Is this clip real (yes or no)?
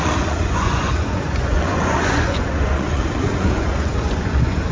no